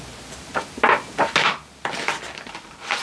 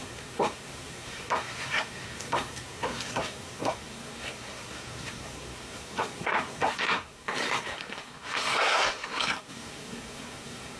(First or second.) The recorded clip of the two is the first